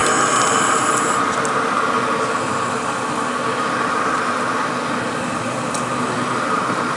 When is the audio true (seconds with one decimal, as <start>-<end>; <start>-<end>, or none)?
0.0-4.1; 4.6-6.4